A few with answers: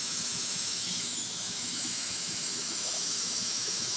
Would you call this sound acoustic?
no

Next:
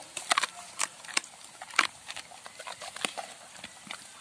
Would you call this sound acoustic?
yes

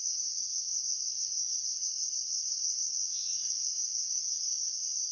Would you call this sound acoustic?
no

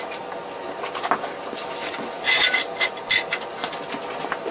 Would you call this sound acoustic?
yes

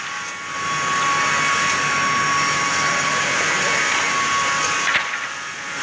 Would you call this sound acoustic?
yes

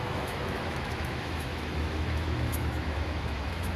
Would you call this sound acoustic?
no